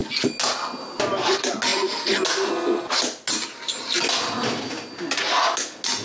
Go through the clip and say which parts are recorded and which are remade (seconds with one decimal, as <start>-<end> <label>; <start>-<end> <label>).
0.0-6.0 recorded